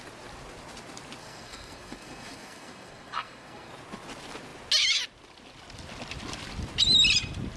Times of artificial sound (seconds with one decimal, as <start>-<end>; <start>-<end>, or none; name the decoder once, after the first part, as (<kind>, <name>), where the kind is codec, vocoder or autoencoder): 1.2-3.7 (codec, SNAC)